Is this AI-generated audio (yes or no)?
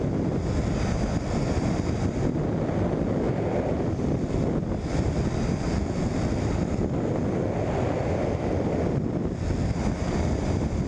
no